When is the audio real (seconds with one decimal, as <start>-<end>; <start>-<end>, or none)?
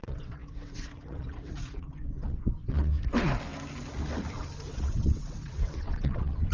2.9-4.7